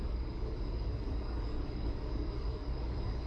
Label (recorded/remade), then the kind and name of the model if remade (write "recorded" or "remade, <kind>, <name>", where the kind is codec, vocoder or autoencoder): remade, codec, DAC